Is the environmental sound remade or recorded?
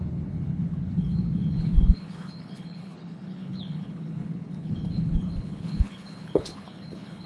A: remade